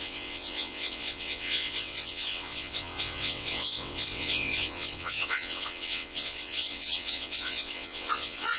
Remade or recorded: remade